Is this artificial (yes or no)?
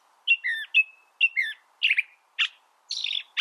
no